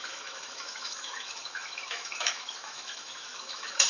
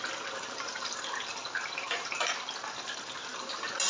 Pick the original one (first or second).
second